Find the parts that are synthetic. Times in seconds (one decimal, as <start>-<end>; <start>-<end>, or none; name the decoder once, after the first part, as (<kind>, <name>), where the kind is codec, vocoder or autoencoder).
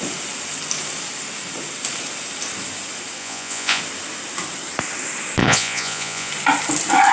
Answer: 3.2-3.8 (vocoder, Vocos); 5.4-6.3